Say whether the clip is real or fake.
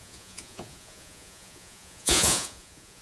fake